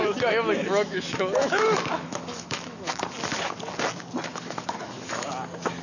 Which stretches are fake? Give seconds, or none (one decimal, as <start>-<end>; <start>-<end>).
0.6-3.0; 4.3-5.3